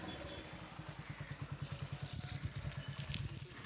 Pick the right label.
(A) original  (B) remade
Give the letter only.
A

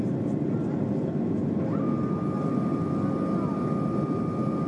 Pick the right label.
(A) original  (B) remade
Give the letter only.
A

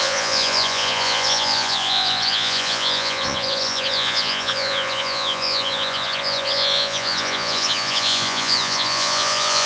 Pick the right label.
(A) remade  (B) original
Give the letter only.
A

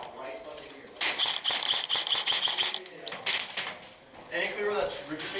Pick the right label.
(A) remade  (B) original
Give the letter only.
B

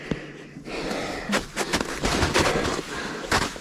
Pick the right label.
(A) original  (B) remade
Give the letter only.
A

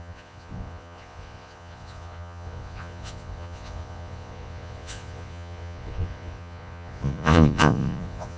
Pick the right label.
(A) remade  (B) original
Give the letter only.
A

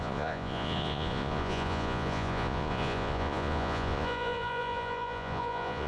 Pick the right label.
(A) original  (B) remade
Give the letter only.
B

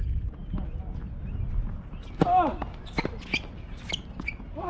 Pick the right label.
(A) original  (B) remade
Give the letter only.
A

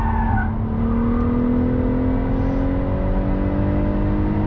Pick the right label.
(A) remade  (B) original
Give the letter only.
B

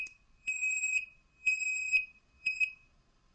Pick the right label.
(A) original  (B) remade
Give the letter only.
B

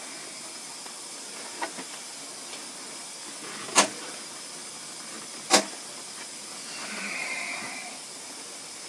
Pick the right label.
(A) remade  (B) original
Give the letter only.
B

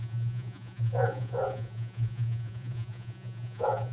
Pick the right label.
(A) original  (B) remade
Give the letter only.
B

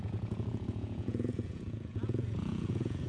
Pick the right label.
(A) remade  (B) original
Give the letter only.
A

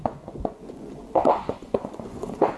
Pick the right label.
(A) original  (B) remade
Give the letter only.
B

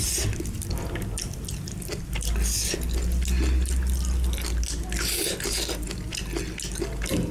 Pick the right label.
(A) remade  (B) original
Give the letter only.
B